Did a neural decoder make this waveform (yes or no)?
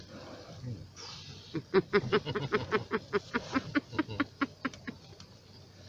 no